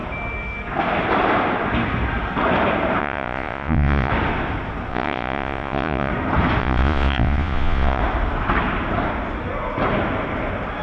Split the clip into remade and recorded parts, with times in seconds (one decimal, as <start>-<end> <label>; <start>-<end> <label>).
0.0-3.0 recorded; 3.0-4.1 remade; 4.1-4.9 recorded; 4.9-6.1 remade; 6.1-6.6 recorded; 6.6-8.0 remade; 8.0-10.8 recorded